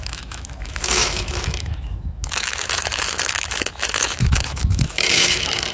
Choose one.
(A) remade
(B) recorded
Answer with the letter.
A